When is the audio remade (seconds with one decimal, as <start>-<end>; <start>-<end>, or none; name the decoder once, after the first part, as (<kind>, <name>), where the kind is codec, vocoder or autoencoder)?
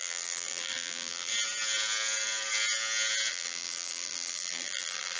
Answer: 0.0-1.3 (vocoder, BigVGAN v2); 3.3-5.2